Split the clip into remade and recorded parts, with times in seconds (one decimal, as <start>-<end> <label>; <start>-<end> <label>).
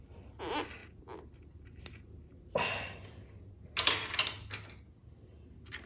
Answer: 0.0-5.9 recorded